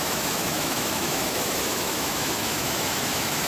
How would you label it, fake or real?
fake